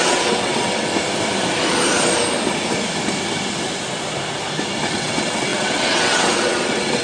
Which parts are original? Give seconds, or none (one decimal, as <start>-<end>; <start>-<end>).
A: 0.9-4.9